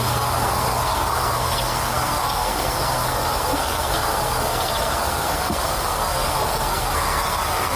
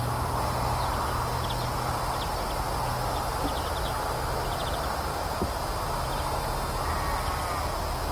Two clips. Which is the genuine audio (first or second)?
second